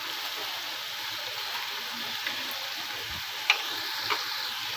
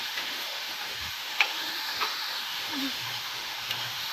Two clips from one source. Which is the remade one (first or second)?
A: second